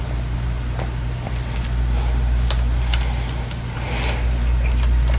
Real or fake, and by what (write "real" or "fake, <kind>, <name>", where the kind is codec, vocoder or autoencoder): real